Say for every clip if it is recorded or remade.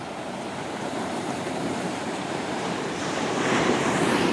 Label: remade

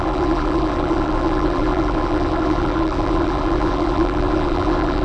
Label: remade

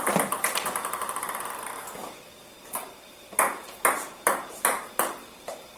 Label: remade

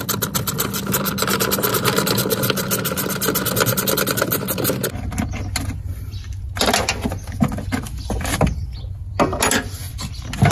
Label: recorded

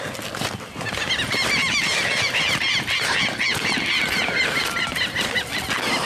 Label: recorded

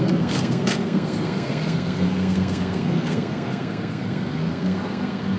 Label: remade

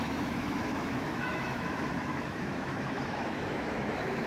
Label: remade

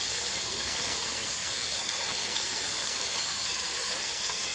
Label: remade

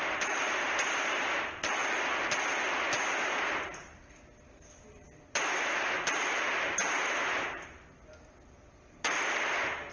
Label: recorded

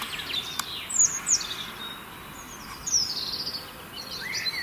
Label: recorded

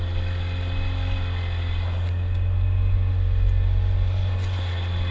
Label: recorded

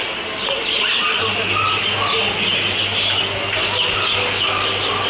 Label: recorded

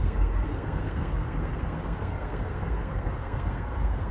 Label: remade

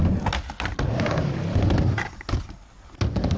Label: recorded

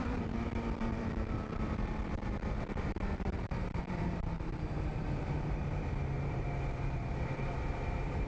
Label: remade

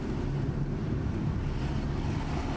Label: recorded